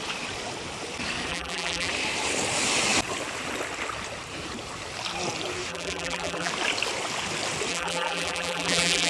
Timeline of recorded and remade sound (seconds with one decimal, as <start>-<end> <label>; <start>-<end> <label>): 0.0-1.3 recorded; 1.3-1.9 remade; 1.9-5.7 recorded; 5.7-6.5 remade; 6.5-7.7 recorded; 7.7-9.1 remade